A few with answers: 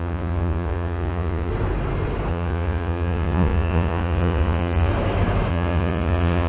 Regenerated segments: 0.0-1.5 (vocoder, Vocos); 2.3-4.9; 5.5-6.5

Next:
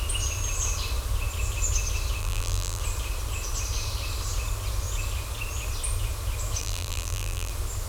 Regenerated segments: 2.2-2.8 (vocoder, BigVGAN v2); 6.6-7.5

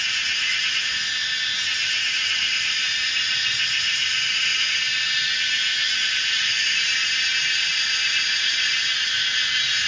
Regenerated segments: none

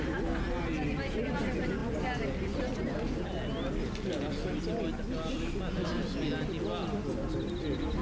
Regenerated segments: none

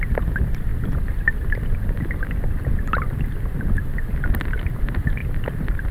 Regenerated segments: none

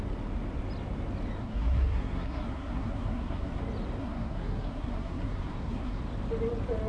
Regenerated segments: 1.4-3.6 (codec, SNAC); 4.0-6.0